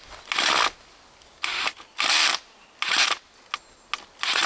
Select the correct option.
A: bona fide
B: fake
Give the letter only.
A